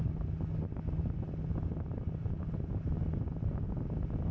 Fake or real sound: real